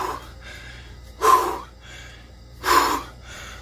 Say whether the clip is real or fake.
fake